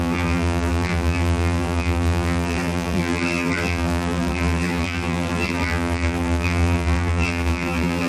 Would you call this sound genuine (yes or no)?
no